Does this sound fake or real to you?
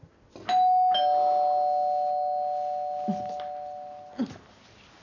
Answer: real